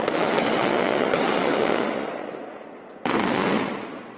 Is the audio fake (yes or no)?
yes